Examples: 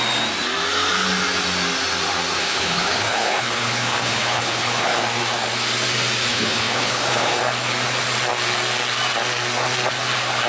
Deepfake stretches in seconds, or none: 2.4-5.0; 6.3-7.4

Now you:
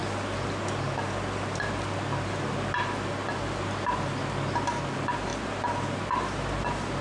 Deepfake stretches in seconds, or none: none

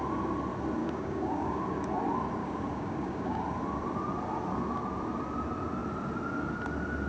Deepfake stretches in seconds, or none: 0.8-1.6; 2.4-3.4

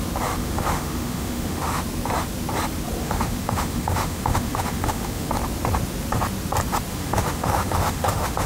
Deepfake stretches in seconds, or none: 0.4-1.8; 3.0-5.3; 6.9-8.5

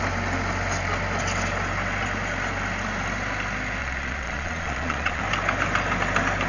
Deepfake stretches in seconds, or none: 3.8-5.2